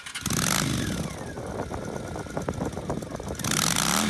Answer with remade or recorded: recorded